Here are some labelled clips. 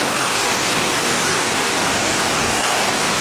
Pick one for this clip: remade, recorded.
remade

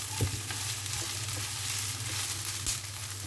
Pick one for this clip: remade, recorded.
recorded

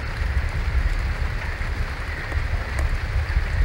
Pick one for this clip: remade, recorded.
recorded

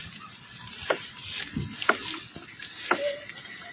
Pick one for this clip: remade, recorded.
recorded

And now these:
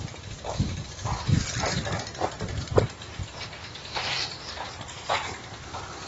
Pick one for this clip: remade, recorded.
recorded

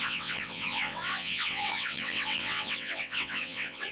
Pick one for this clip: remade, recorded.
remade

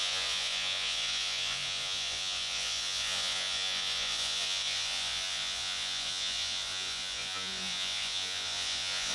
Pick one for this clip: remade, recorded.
remade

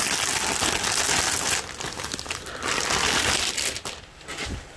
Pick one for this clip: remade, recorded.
recorded